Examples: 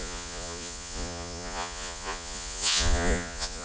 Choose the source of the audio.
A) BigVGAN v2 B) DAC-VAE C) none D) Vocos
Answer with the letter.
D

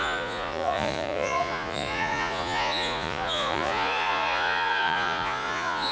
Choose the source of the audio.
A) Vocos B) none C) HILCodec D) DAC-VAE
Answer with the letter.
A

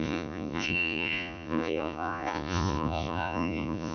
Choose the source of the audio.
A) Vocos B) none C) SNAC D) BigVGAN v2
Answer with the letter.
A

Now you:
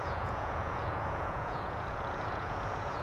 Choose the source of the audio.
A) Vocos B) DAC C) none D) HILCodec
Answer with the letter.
A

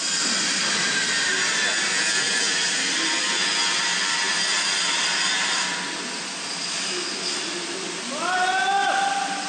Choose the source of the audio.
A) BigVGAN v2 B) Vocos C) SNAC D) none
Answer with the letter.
D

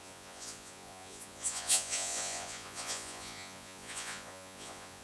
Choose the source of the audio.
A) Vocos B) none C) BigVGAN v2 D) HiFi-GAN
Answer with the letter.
A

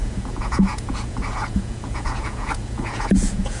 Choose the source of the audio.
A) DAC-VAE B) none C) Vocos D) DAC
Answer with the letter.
C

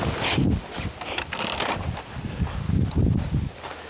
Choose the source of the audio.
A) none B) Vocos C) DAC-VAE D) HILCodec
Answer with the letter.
A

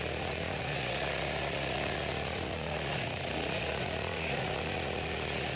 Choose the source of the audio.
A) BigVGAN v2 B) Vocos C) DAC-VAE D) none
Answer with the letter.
B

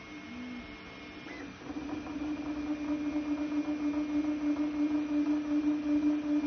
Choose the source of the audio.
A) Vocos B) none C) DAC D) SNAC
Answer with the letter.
B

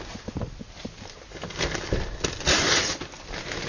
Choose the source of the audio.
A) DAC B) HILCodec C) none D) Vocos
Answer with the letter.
C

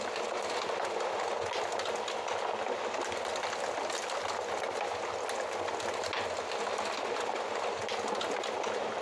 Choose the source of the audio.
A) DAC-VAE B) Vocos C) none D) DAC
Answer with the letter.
C